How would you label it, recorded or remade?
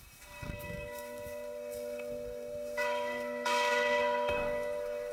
remade